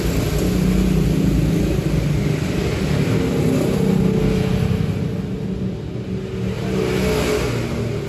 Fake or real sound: real